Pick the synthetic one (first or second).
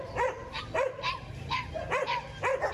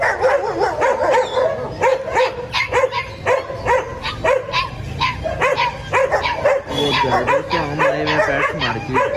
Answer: first